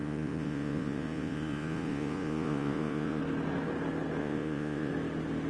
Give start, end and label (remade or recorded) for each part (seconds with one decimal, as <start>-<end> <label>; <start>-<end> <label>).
0.0-3.2 remade; 3.2-4.2 recorded; 4.2-4.9 remade; 4.9-5.5 recorded